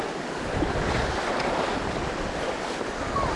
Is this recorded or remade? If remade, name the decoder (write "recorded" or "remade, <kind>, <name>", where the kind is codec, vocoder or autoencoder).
recorded